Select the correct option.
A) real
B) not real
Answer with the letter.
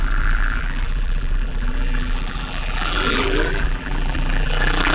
B